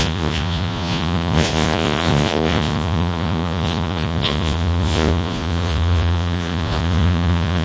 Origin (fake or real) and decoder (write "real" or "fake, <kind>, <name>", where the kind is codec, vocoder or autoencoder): fake, vocoder, Vocos